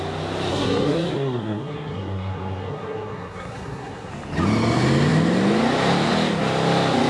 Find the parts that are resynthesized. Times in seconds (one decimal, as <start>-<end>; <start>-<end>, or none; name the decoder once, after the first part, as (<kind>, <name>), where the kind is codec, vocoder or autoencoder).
0.5-4.1 (codec, SNAC)